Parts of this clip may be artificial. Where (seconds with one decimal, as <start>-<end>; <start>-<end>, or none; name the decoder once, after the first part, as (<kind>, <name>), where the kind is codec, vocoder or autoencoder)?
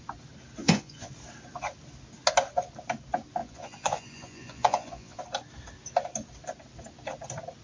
0.6-1.1 (vocoder, Vocos); 3.4-5.2